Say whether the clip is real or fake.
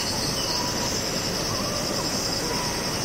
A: real